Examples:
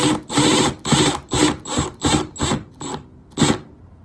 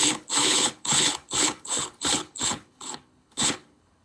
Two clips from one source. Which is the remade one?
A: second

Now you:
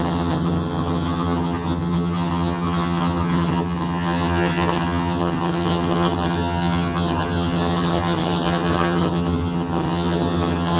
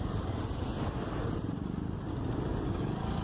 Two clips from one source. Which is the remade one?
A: first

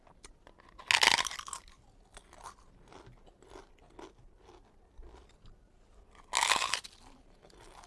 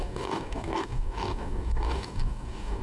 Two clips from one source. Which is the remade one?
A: second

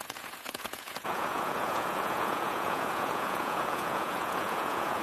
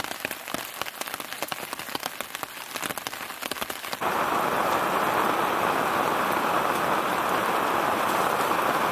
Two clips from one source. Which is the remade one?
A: first